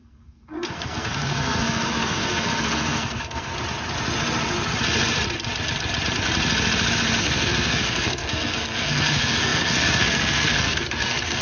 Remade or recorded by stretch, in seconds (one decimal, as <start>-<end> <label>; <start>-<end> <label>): 0.0-3.5 remade; 3.5-7.2 recorded; 7.2-11.4 remade